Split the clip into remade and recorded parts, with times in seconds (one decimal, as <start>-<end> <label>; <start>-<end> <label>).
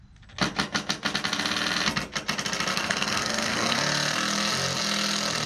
0.0-2.7 recorded; 2.7-3.8 remade; 3.8-5.5 recorded